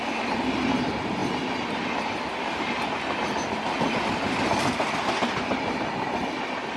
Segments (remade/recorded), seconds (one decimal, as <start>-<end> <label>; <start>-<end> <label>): 0.0-6.8 recorded